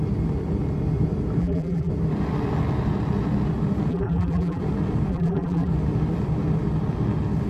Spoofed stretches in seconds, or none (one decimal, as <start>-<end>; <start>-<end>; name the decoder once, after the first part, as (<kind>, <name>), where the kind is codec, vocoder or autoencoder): 1.4-1.9 (vocoder, BigVGAN v2); 3.9-4.6; 5.1-5.7